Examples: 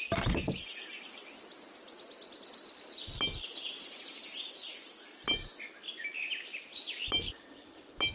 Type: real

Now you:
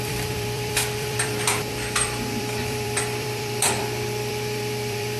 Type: fake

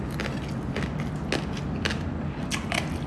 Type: real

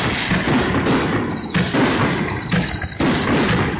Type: real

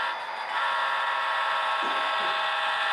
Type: real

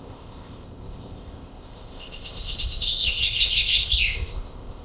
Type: fake